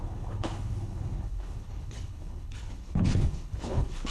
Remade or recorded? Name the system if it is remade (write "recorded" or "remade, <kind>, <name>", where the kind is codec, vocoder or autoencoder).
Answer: remade, codec, HILCodec